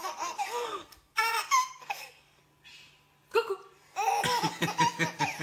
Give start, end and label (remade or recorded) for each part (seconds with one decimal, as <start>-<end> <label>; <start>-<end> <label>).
0.0-2.4 remade; 2.4-5.4 recorded